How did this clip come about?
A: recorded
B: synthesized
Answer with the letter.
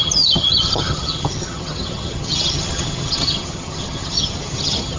B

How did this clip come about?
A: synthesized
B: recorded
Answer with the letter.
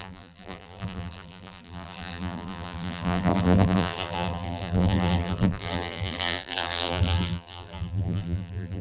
A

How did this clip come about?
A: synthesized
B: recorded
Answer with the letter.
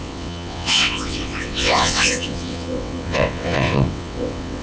A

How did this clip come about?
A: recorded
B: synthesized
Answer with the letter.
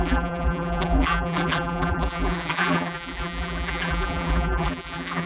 B